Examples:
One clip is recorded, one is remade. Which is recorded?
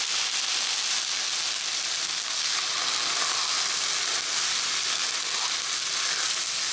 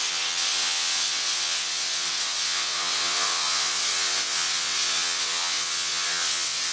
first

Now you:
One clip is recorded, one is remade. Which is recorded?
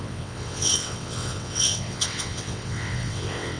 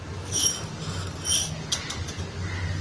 second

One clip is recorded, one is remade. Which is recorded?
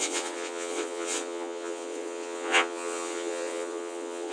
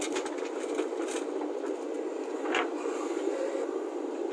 second